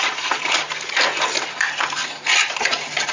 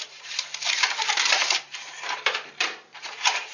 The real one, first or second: first